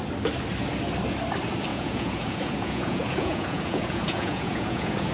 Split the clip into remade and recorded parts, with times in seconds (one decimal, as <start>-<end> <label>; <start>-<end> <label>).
0.0-1.7 recorded; 1.7-5.1 remade